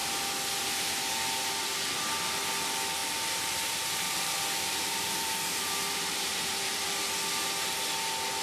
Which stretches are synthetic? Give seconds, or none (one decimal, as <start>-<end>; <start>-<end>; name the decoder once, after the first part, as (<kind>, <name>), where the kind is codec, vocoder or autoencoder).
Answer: 3.0-6.9 (vocoder, BigVGAN v2)